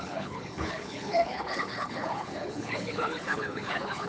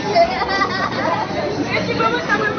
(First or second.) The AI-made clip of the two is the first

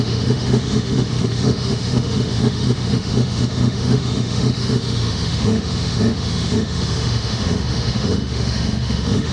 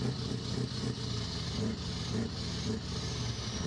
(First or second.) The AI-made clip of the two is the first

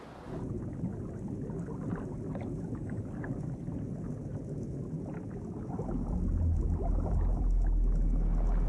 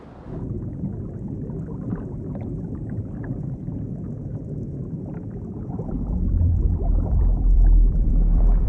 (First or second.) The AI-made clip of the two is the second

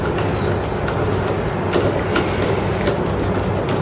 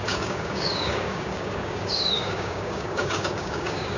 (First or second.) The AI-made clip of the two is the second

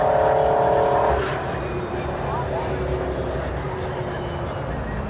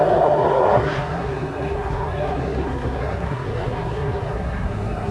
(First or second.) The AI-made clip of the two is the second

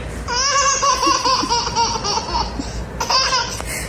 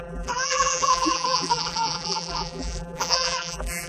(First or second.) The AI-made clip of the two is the second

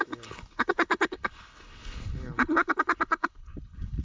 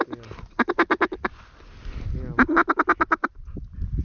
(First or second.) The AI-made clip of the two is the first